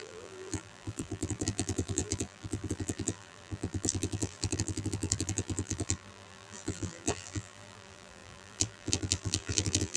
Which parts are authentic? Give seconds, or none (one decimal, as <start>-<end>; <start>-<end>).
none